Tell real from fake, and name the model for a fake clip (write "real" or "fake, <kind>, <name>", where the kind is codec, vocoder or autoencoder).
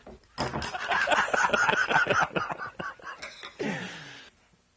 real